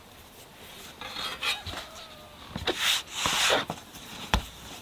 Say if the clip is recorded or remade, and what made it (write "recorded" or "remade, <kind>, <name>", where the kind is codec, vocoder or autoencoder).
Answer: remade, vocoder, BigVGAN v2